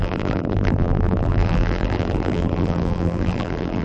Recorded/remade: remade